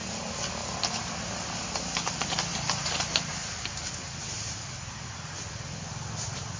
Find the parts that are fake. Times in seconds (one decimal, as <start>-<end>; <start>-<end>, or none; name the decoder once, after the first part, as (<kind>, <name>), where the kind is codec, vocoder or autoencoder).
0.6-1.1 (vocoder, BigVGAN v2)